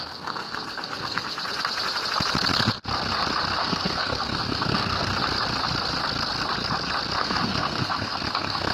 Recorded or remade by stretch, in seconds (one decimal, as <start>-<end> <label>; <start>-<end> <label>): 0.0-1.4 remade; 1.4-3.6 recorded; 3.6-5.1 remade; 5.1-7.2 recorded; 7.2-8.7 remade